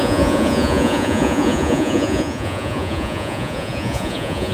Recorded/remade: remade